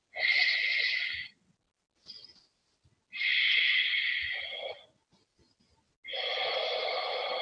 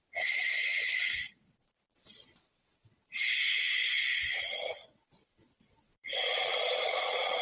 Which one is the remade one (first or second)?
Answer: second